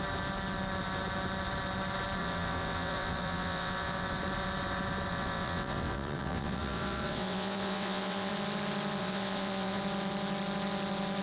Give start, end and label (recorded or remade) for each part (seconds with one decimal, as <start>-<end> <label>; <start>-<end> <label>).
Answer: 0.0-2.2 recorded; 2.2-4.2 remade; 4.2-5.1 recorded; 5.1-8.3 remade; 8.3-9.0 recorded; 9.0-9.8 remade; 9.8-11.2 recorded